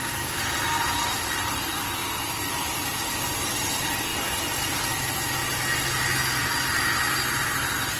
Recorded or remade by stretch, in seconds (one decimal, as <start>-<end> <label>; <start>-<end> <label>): 0.0-5.4 remade; 5.4-7.4 recorded; 7.4-8.0 remade